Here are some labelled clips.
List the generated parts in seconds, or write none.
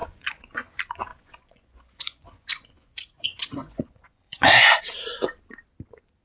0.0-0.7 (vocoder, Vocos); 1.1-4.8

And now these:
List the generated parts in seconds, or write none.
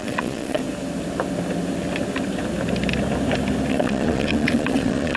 0.0-0.6 (vocoder, Vocos); 3.7-5.2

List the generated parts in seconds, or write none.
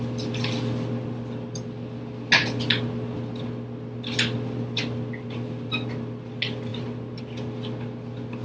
none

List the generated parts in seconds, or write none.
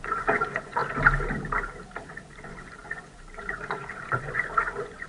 0.0-0.8 (vocoder, Vocos); 2.1-5.1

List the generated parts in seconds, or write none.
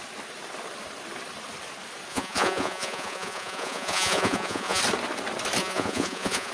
2.1-4.8 (vocoder, Vocos); 5.6-6.5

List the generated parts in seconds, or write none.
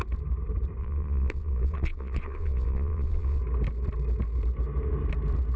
0.8-3.4 (vocoder, Vocos)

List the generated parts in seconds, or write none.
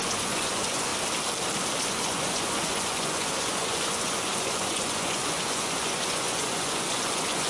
0.0-0.9 (vocoder, Vocos); 1.8-7.5